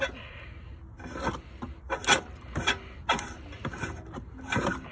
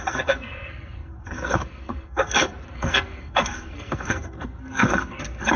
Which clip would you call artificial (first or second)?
second